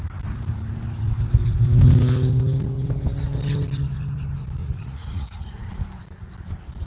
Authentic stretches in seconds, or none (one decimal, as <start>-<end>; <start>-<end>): 0.0-4.6; 5.7-6.9

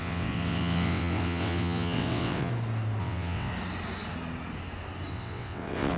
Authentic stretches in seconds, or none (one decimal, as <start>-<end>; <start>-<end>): 2.5-3.0; 3.5-5.1

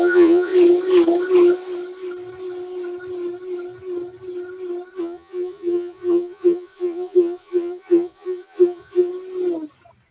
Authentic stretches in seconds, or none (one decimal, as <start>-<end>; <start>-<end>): 0.5-5.0; 9.1-10.1

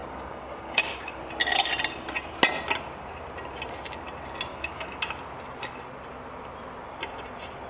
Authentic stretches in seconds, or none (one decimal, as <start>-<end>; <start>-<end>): 1.2-4.5; 5.0-7.7

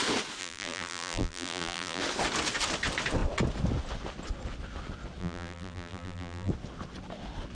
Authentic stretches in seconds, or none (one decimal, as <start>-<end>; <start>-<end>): 0.0-0.4; 2.0-5.2; 6.5-7.5

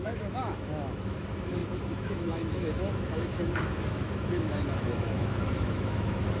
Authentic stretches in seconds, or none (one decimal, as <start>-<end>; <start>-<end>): none

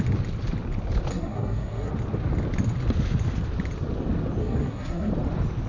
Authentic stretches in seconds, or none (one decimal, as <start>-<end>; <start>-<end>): 0.0-1.1; 1.9-4.4; 5.1-5.7